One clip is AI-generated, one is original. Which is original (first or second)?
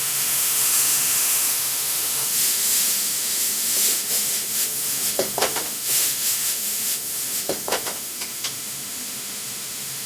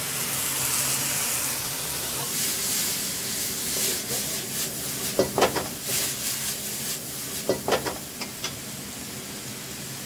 second